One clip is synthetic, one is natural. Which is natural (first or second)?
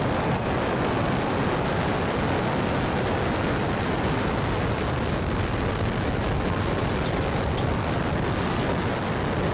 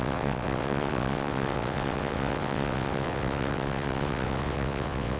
first